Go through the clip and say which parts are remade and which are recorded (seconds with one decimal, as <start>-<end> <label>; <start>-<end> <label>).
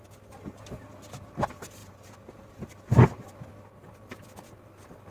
0.0-5.1 recorded